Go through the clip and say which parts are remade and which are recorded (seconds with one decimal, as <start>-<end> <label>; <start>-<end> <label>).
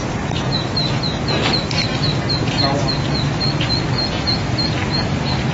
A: 0.0-4.8 recorded; 4.8-5.5 remade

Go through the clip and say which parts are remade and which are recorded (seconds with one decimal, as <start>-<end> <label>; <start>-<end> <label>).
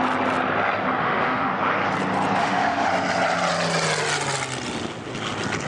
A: 0.0-1.0 recorded; 1.0-1.5 remade; 1.5-2.4 recorded; 2.4-2.9 remade; 2.9-5.7 recorded